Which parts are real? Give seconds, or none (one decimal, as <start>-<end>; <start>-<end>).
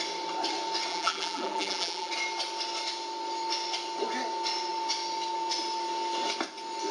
0.0-0.9; 2.1-6.9